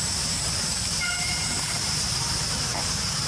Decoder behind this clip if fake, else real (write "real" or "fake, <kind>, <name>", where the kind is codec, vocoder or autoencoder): fake, vocoder, BigVGAN v2